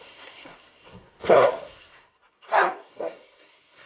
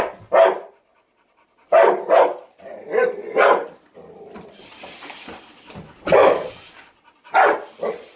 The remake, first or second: first